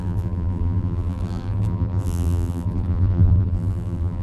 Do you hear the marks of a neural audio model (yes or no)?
yes